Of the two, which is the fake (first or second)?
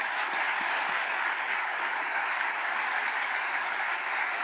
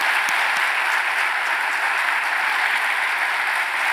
first